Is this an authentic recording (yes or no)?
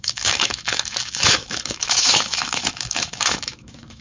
no